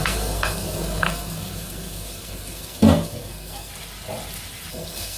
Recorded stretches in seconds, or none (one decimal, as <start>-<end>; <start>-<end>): 3.7-4.7